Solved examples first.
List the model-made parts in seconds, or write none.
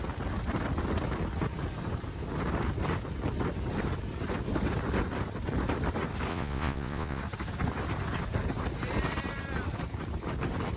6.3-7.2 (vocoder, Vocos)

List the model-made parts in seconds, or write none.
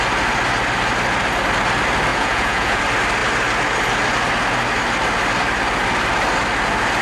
2.1-2.8 (vocoder, Vocos)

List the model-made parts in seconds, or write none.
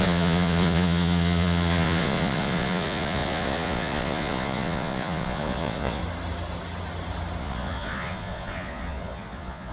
0.0-6.0 (vocoder, Vocos); 7.4-9.7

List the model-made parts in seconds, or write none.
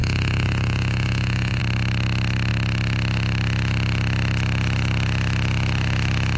0.0-1.6 (vocoder, Vocos)